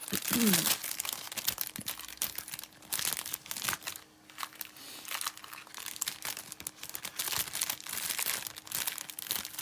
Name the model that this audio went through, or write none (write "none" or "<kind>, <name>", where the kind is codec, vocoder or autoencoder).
none